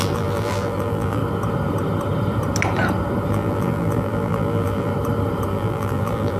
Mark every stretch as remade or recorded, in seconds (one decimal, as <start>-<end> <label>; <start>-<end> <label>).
0.0-1.2 remade; 1.2-3.3 recorded; 3.3-4.9 remade; 4.9-5.5 recorded; 5.5-6.4 remade